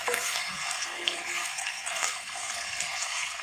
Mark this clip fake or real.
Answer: fake